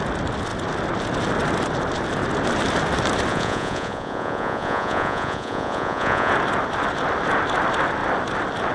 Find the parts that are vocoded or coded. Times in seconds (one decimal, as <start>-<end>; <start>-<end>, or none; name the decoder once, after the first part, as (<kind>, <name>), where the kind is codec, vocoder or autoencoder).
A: 3.3-6.3 (vocoder, Vocos)